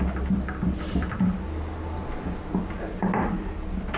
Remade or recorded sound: recorded